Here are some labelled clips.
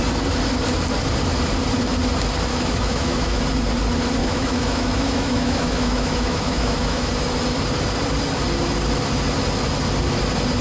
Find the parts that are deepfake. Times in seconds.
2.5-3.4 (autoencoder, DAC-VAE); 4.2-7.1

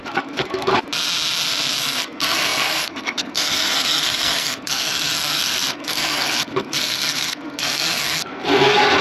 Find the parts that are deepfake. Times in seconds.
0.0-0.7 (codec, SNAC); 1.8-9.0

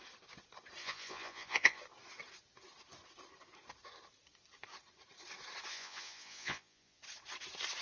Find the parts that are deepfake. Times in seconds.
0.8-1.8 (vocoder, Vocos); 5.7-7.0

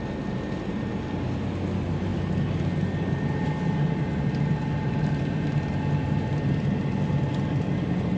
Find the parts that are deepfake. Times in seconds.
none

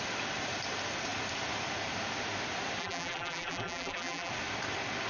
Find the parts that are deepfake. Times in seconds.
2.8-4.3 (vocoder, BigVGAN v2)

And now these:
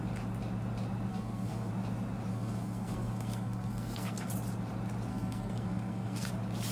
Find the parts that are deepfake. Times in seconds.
1.1-1.7 (codec, SNAC); 2.3-4.3; 5.1-6.3